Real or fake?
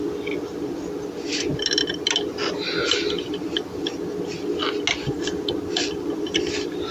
real